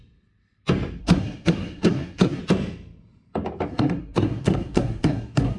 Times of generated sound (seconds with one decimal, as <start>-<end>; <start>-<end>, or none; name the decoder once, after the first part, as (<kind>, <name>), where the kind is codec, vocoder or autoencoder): 1.0-2.4 (codec, SNAC); 3.7-5.6